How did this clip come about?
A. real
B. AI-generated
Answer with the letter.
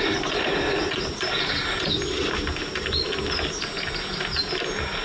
A